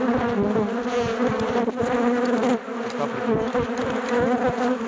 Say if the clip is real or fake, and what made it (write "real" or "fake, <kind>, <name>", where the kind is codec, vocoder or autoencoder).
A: real